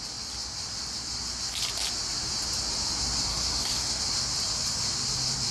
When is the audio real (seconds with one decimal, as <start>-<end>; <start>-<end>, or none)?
0.0-3.3; 4.0-5.5